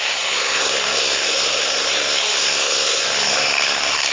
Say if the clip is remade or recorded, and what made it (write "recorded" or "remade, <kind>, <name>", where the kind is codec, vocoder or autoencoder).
remade, codec, SNAC